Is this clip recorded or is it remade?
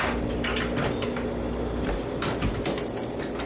recorded